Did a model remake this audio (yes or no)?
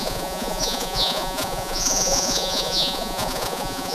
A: yes